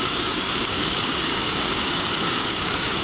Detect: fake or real fake